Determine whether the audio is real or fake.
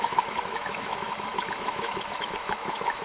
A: fake